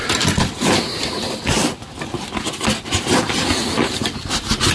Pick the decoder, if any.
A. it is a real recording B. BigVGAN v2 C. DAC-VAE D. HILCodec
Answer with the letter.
A